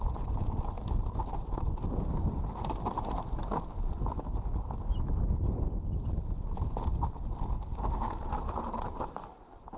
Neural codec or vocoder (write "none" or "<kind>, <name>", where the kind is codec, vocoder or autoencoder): none